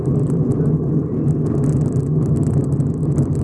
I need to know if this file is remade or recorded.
recorded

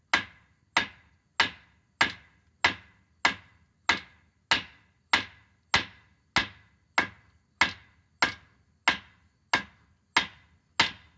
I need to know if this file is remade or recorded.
recorded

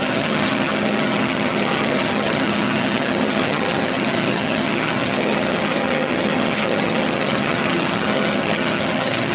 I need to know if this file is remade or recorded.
remade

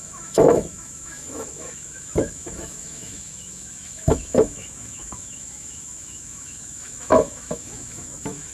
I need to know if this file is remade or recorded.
remade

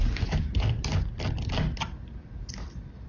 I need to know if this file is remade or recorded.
recorded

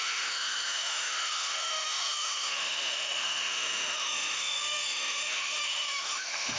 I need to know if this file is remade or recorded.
remade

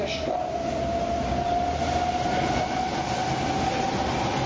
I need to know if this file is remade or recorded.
recorded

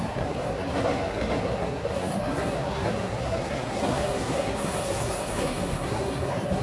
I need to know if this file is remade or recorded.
remade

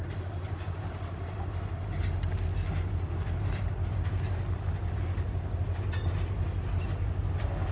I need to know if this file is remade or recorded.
recorded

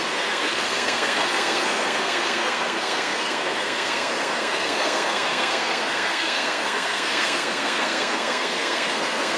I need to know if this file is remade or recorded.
remade